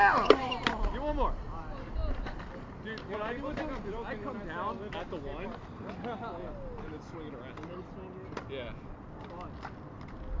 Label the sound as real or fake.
real